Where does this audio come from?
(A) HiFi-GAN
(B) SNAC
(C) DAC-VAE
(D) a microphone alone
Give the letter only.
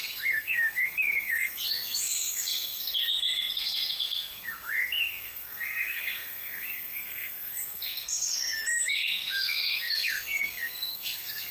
B